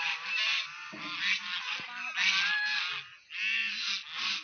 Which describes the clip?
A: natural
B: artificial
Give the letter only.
A